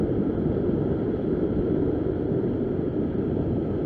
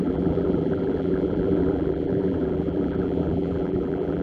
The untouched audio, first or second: first